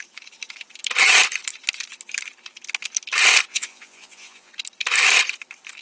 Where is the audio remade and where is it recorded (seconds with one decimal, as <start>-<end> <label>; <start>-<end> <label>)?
0.0-3.5 recorded; 3.5-4.5 remade; 4.5-5.8 recorded